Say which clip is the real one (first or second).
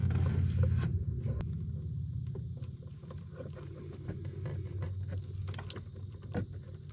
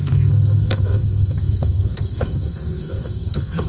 first